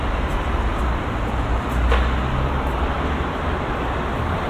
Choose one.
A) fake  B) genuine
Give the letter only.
B